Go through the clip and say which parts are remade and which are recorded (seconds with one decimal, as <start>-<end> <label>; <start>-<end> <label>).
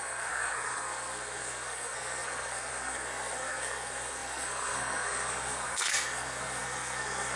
0.0-7.4 remade